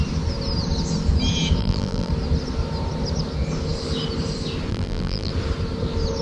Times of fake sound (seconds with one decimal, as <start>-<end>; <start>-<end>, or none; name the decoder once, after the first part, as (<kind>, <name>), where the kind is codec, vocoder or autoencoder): 1.6-2.1 (vocoder, BigVGAN v2); 4.7-5.3